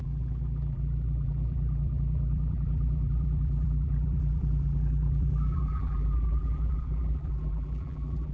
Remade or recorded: remade